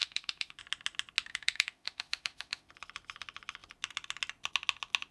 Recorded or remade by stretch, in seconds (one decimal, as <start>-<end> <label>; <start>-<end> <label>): 0.0-0.6 remade; 0.6-1.3 recorded; 1.3-2.7 remade; 2.7-5.1 recorded